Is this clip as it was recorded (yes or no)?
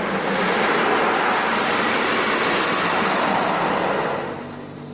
yes